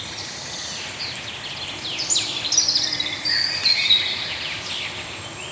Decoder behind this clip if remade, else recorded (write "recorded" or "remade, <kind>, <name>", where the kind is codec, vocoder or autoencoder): remade, vocoder, BigVGAN v2